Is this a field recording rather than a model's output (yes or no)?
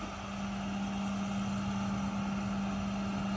yes